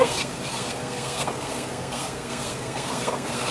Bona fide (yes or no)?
no